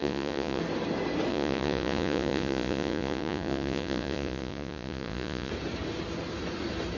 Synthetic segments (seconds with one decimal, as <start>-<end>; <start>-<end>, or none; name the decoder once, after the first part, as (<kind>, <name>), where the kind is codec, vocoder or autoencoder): 0.0-0.6 (vocoder, Vocos); 1.3-5.5